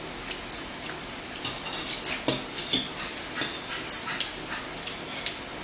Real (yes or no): yes